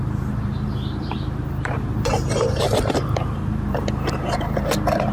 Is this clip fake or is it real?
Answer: fake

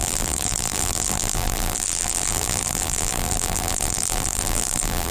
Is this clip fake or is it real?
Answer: fake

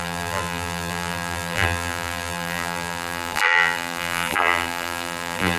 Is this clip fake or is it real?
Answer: fake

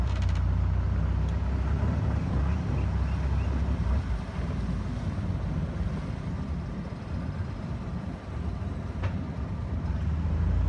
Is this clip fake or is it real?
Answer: real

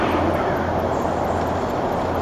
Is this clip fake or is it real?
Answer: real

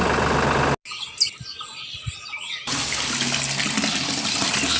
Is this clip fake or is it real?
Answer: real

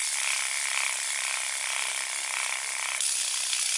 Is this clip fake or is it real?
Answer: real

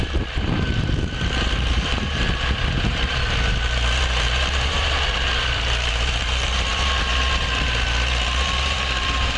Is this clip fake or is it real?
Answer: fake